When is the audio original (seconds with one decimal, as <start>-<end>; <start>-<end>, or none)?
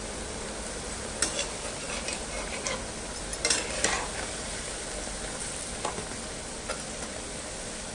0.0-7.9